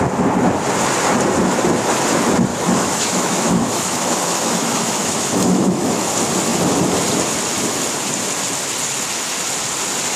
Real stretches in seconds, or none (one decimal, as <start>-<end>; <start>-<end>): 0.0-2.5; 6.1-10.2